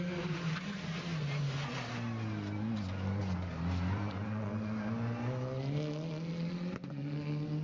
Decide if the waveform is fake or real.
real